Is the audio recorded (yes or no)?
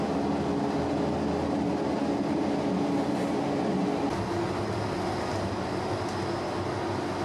yes